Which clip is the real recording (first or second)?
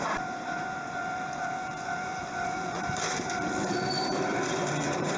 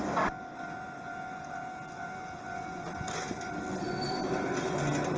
second